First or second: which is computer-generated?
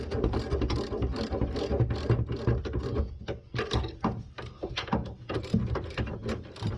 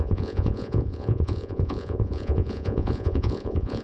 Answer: second